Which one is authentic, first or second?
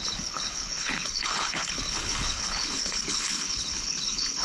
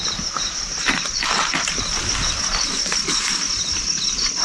second